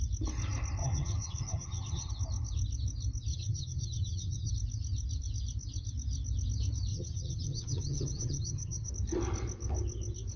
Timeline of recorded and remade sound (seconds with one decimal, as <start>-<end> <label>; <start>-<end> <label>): 0.0-0.8 recorded; 0.8-2.1 remade; 2.1-3.3 recorded; 3.3-4.5 remade; 4.5-6.9 recorded; 6.9-8.9 remade; 8.9-10.4 recorded